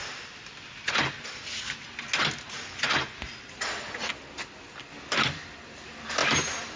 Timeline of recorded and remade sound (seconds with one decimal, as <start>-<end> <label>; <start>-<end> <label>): 0.0-6.8 recorded